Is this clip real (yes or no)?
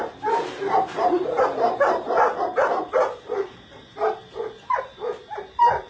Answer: no